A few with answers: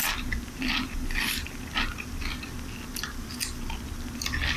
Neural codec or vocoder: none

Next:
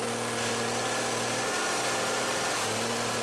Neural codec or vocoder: none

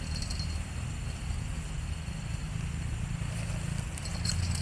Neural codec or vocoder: none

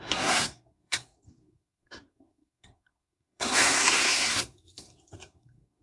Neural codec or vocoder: codec, SNAC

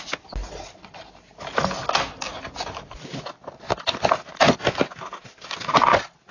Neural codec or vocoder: none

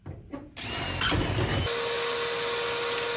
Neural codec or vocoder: none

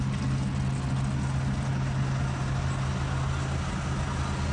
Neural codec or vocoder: none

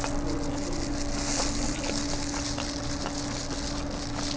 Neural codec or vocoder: none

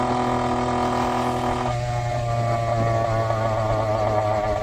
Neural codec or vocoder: none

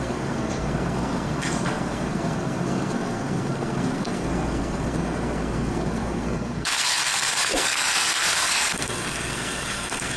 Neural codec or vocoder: codec, SNAC